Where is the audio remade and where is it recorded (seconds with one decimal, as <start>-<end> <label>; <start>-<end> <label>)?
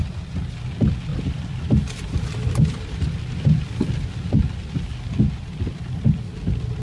0.0-1.1 recorded; 1.1-5.2 remade; 5.2-6.8 recorded